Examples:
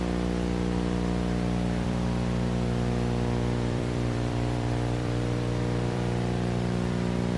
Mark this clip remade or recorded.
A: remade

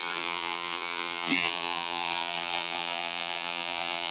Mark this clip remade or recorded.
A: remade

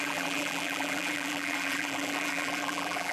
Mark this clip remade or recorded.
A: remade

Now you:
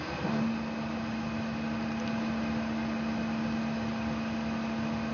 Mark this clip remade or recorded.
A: recorded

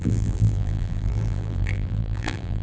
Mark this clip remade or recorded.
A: remade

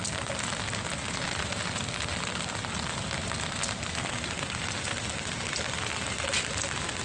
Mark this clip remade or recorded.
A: recorded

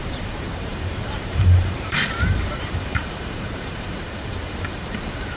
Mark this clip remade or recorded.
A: remade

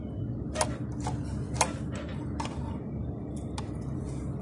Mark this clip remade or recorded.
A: recorded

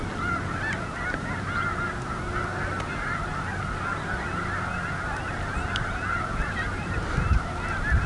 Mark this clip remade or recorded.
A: recorded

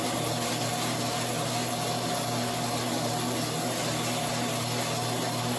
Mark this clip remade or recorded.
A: recorded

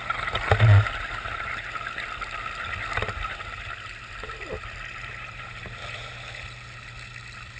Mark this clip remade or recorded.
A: recorded